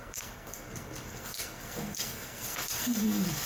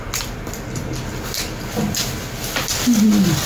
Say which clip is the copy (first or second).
first